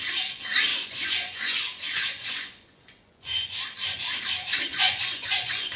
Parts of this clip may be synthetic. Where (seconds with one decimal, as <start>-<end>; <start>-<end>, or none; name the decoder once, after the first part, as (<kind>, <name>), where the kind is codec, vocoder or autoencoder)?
0.7-4.2 (vocoder, Vocos); 4.7-5.8